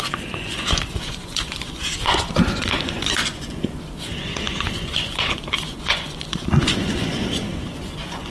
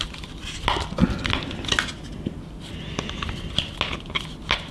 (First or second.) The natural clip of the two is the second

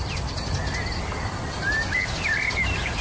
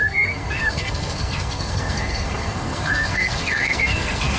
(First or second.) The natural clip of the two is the first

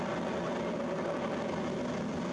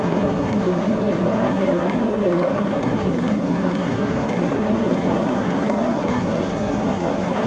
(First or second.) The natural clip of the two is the first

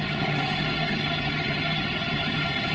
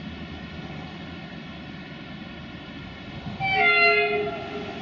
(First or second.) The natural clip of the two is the second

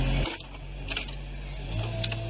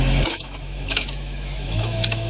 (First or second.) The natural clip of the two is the first